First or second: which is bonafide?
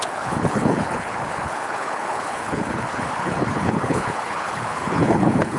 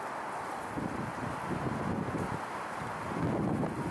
second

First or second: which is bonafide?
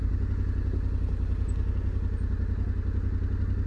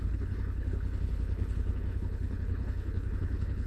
first